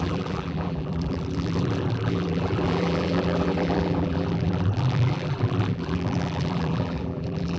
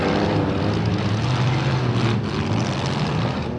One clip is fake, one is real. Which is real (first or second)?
second